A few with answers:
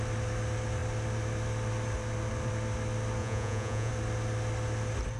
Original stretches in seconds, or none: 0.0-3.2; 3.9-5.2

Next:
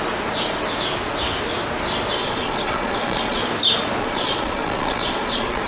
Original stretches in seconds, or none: 0.0-2.2; 3.4-4.0

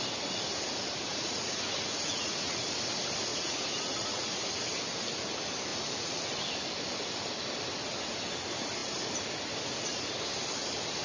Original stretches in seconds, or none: 0.0-1.1; 2.6-3.3; 4.4-5.7; 6.2-11.0